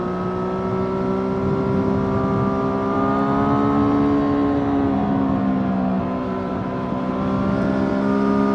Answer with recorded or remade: recorded